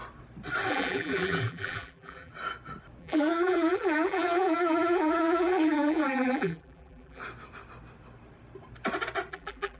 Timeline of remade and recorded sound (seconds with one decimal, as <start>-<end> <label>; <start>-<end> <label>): 0.0-0.7 recorded; 0.7-2.3 remade; 2.3-3.0 recorded; 3.0-7.2 remade; 7.2-9.3 recorded; 9.3-9.8 remade